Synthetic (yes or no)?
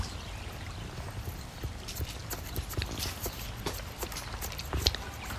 no